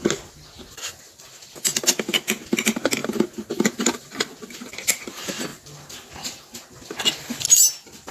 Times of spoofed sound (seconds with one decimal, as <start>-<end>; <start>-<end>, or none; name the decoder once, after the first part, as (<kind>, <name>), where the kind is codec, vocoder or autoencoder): none